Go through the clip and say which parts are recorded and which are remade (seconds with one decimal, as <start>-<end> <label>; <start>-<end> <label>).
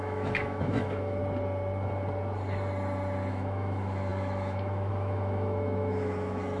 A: 0.0-1.2 remade; 1.2-3.3 recorded; 3.3-6.6 remade